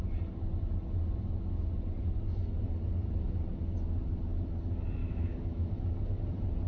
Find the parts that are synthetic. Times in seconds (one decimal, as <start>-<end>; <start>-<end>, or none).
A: 5.0-5.7